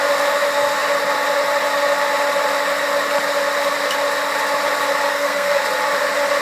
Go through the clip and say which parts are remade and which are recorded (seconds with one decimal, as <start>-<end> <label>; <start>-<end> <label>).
0.0-5.1 recorded; 5.1-5.6 remade; 5.6-6.4 recorded